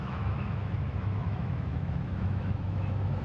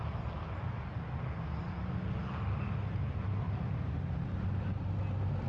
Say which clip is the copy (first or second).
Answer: first